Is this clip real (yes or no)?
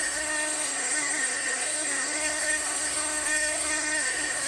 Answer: no